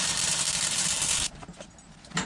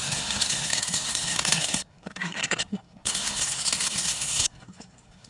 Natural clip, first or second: first